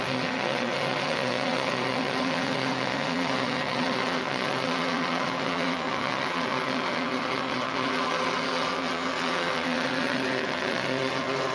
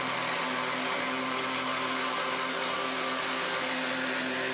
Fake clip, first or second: first